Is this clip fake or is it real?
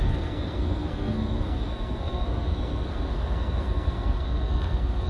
fake